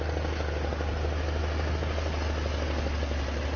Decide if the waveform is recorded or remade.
recorded